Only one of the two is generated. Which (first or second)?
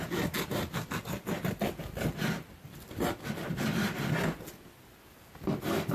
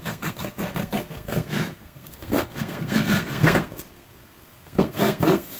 second